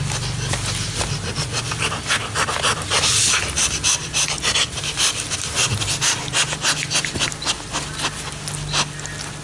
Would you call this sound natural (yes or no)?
yes